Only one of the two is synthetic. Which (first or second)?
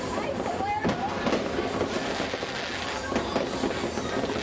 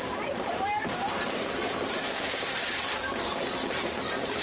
second